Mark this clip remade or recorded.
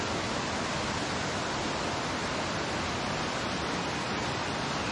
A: recorded